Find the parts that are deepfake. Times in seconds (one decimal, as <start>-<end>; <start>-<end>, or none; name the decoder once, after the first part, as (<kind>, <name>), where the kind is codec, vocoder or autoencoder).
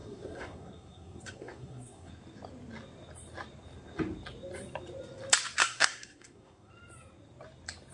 0.0-2.1 (codec, SNAC); 5.6-6.7